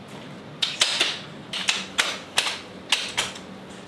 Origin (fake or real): real